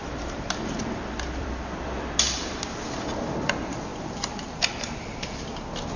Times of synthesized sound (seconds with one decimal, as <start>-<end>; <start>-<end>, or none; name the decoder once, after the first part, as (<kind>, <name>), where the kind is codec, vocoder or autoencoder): 0.0-2.5 (vocoder, BigVGAN v2); 3.9-4.5